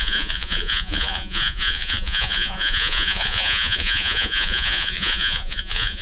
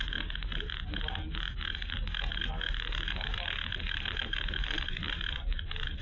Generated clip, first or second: first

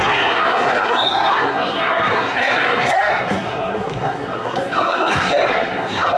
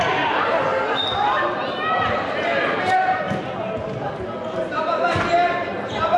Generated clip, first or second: first